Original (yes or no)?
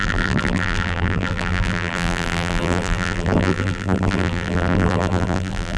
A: no